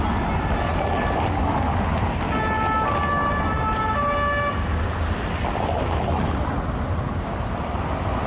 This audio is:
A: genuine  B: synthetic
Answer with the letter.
A